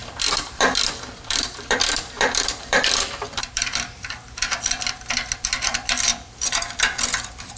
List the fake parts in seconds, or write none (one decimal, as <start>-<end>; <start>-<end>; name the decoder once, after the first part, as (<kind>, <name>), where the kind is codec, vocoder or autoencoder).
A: 0.0-4.6 (vocoder, BigVGAN v2); 6.1-7.0